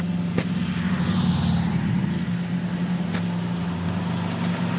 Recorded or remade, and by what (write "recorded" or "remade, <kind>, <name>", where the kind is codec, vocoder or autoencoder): recorded